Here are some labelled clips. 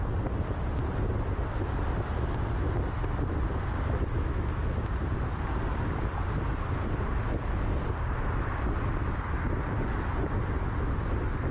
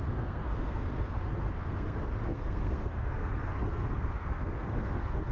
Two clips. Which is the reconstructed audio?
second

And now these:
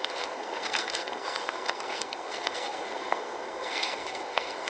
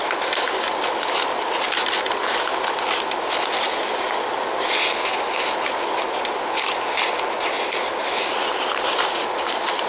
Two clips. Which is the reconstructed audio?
first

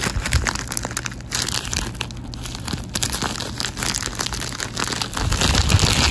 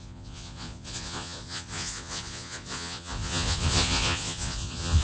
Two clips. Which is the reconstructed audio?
second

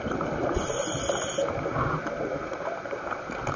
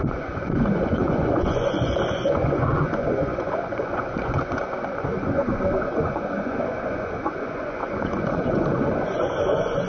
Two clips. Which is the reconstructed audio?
second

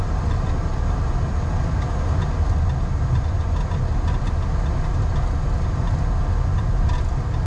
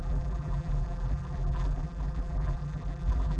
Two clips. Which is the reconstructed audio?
second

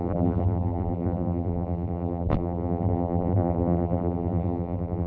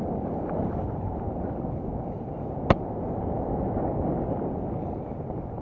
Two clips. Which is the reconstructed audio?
first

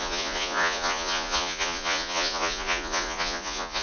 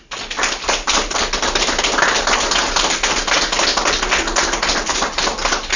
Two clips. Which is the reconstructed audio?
first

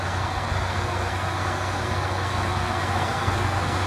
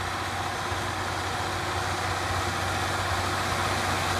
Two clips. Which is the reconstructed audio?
first